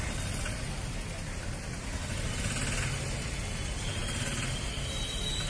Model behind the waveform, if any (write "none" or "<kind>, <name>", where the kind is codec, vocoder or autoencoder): none